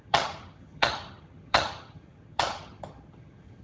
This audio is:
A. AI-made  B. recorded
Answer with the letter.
A